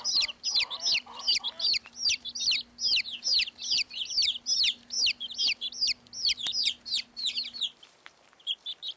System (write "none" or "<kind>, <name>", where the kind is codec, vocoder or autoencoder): vocoder, BigVGAN v2